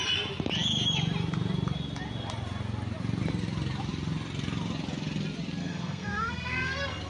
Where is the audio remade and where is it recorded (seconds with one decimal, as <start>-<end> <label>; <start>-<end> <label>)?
0.0-5.6 recorded; 5.6-7.1 remade